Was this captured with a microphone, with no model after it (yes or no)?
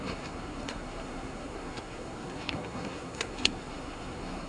no